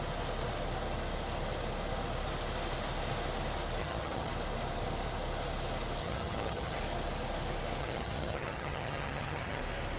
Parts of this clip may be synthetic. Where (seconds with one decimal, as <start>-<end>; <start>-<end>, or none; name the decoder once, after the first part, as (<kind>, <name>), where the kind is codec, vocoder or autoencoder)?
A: 3.8-4.3 (vocoder, HiFi-GAN); 6.0-6.8; 7.8-9.6